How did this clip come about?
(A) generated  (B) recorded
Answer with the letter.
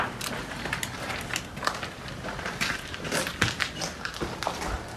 B